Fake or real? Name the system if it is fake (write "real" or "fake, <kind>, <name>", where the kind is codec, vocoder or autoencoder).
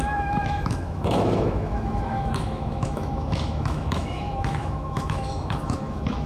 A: fake, autoencoder, DAC-VAE